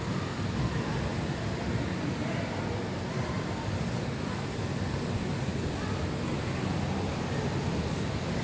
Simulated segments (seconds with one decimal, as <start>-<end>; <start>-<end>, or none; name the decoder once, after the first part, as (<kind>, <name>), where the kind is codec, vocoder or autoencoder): none

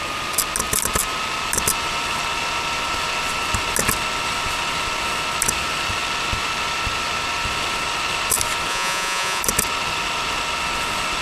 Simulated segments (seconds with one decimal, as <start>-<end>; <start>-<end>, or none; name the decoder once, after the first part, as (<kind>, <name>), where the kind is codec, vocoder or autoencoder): 8.7-9.4 (vocoder, Vocos)

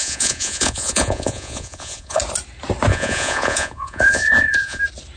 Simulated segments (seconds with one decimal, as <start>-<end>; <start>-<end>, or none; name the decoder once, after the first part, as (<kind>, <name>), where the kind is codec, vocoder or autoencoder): 0.0-2.2 (vocoder, Vocos); 2.9-4.8